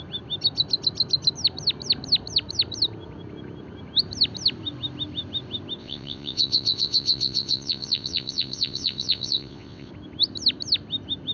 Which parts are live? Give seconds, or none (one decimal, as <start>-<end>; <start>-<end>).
0.0-5.8; 9.9-11.3